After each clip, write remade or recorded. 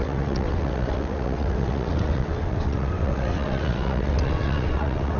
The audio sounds remade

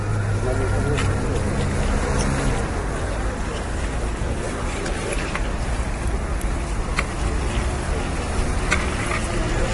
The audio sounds recorded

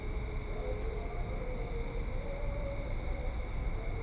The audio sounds recorded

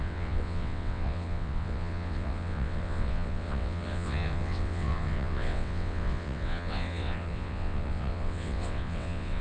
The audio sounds remade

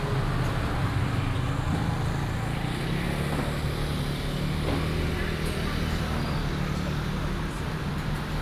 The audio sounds recorded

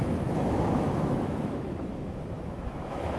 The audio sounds remade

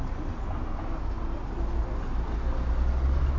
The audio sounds recorded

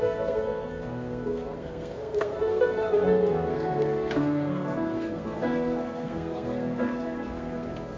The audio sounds remade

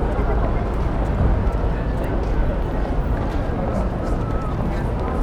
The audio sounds recorded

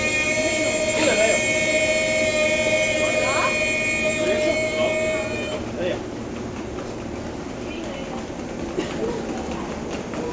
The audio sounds recorded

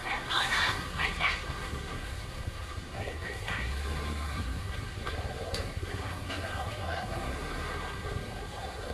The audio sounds remade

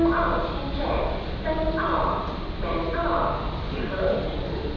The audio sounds recorded